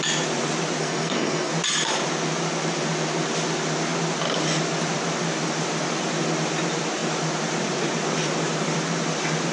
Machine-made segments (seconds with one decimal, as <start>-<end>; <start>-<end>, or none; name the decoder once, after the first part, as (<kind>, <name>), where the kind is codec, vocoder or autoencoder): 0.8-1.5 (codec, SNAC)

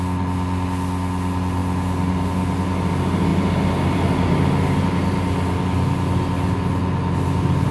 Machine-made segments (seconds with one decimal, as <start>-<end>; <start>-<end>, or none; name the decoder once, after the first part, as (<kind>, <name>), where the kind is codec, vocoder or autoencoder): none

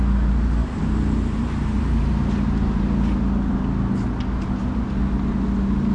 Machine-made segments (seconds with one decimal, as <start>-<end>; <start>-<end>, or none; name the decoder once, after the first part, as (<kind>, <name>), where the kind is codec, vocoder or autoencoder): 0.6-2.2 (vocoder, BigVGAN v2)

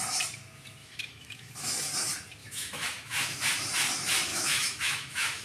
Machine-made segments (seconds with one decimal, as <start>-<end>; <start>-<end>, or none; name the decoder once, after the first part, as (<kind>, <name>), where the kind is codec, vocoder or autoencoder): 0.8-1.5 (autoencoder, DAC-VAE); 2.4-3.4; 4.3-5.4

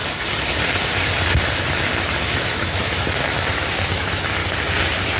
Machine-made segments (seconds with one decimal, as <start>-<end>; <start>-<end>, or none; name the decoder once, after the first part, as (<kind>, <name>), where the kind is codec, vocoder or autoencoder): 1.6-4.4 (autoencoder, DAC-VAE)

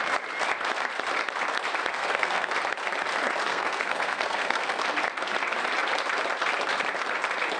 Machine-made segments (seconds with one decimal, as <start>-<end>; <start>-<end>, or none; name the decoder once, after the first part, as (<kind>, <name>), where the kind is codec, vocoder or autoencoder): 1.9-2.5 (codec, SNAC); 3.5-4.8

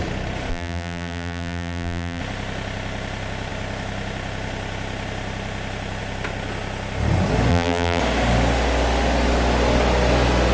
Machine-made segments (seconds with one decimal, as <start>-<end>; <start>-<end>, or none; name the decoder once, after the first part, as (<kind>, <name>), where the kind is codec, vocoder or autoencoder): 0.5-2.2 (vocoder, BigVGAN v2); 7.5-8.0